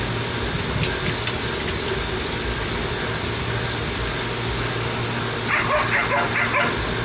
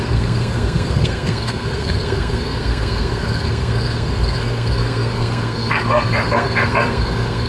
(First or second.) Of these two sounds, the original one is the first